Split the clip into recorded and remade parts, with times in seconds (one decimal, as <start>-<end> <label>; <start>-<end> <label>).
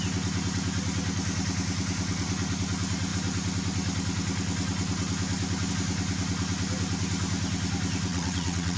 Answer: 0.0-8.1 recorded; 8.1-8.8 remade